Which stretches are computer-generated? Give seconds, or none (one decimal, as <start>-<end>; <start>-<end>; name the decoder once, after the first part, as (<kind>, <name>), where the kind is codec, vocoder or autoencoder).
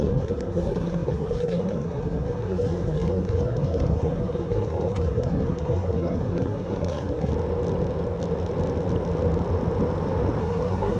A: 0.0-7.3 (codec, SNAC); 10.4-11.0